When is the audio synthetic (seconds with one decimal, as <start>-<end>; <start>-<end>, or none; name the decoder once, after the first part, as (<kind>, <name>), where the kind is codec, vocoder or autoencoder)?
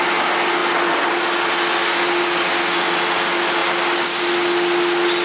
none